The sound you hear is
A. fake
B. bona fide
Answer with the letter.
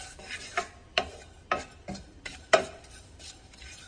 B